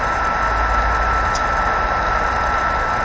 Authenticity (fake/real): real